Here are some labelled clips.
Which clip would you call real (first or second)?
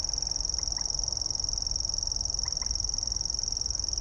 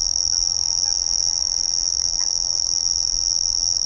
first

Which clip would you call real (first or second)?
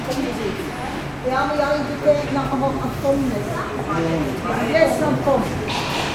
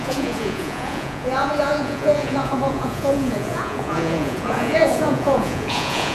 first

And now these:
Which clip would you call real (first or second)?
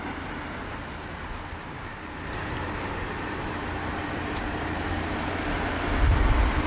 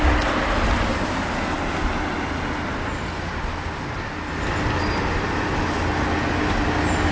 second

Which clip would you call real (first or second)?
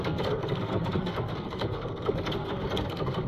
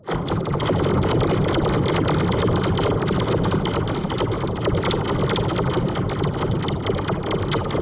second